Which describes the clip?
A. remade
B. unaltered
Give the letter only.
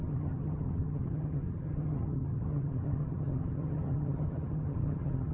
A